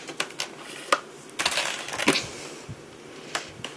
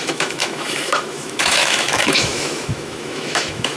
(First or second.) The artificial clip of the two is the second